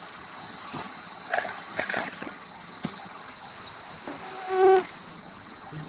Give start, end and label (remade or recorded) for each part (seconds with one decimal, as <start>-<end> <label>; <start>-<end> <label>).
0.0-3.5 remade; 3.5-5.1 recorded; 5.1-5.9 remade